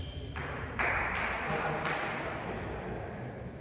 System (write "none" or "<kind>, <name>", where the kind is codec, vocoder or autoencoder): none